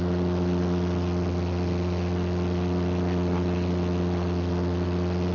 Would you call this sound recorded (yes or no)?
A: yes